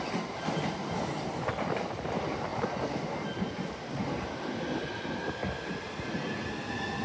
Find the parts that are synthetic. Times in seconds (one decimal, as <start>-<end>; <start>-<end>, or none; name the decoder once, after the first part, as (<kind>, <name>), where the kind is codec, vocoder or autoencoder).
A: none